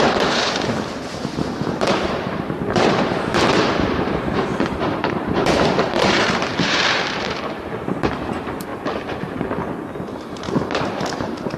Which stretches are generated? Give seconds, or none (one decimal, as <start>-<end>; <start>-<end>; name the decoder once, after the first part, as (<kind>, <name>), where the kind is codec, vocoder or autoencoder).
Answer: 0.0-8.7 (vocoder, BigVGAN v2); 11.2-11.6